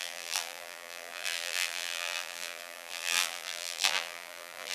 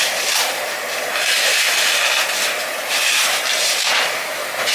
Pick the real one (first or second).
second